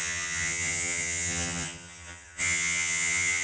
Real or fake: fake